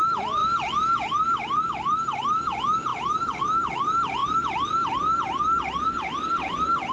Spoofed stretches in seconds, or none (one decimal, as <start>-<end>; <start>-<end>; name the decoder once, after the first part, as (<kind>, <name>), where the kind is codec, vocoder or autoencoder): 2.9-3.4 (vocoder, BigVGAN v2)